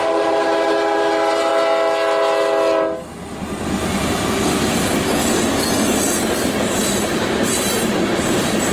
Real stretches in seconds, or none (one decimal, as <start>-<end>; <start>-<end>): 1.5-6.2